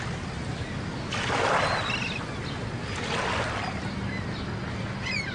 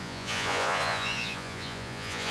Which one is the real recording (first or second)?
first